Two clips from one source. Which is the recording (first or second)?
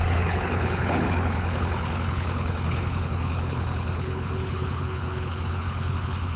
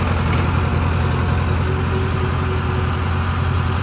second